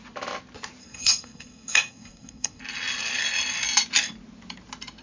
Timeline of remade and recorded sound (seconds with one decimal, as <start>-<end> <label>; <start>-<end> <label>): 0.0-0.8 recorded; 0.8-2.6 remade; 2.6-5.0 recorded